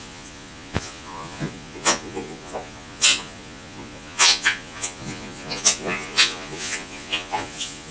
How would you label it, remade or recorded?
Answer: remade